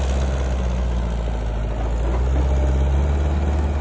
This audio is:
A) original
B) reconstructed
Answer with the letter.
A